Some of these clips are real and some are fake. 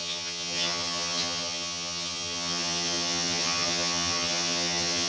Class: fake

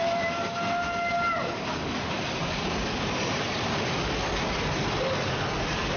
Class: real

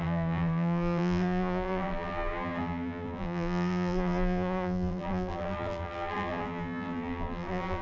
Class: fake